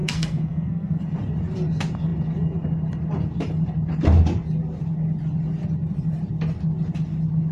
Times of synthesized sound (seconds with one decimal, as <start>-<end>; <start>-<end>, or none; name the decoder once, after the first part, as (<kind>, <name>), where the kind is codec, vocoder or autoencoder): 0.0-1.0 (codec, SNAC)